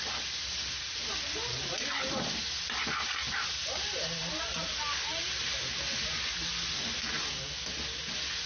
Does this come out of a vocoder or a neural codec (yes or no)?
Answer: no